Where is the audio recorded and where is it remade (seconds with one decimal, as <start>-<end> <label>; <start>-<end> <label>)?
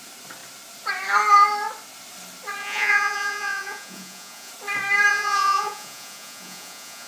0.0-2.6 recorded; 2.6-4.5 remade; 4.5-5.1 recorded; 5.1-7.1 remade